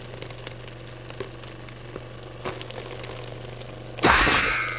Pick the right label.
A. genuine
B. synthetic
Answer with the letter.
A